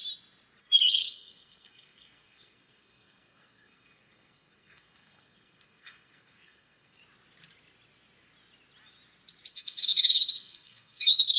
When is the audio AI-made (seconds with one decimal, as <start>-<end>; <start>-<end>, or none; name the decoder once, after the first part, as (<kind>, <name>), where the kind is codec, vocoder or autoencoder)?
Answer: 0.6-7.0 (codec, SNAC); 9.5-11.4